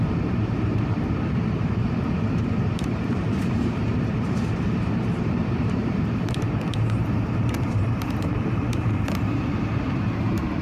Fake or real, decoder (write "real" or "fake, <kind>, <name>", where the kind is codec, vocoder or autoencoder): fake, vocoder, BigVGAN v2